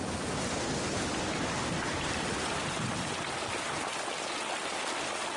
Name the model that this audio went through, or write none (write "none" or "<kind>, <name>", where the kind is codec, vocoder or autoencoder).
none